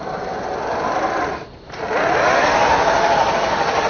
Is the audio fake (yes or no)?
no